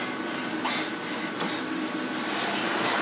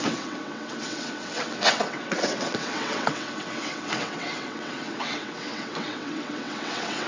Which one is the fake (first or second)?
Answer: second